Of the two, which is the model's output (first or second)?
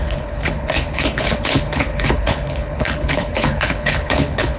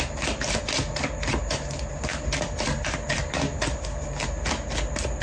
first